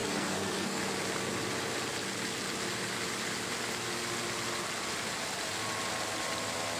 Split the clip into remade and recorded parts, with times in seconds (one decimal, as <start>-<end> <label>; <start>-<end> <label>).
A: 0.0-0.8 remade; 0.8-6.8 recorded